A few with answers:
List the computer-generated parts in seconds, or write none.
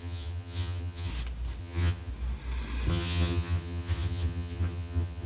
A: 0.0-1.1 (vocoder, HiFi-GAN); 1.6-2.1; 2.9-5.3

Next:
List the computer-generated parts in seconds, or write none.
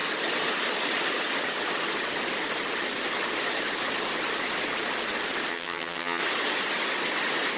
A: 5.5-6.2 (vocoder, HiFi-GAN)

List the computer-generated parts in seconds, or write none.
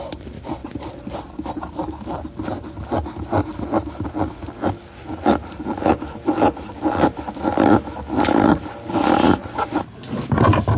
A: none